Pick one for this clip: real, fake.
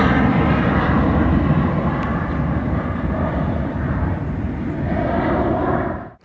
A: real